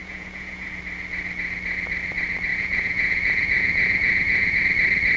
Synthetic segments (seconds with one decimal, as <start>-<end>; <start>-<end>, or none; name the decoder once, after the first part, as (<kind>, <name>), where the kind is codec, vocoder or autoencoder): 0.0-0.7 (vocoder, Vocos); 2.5-4.6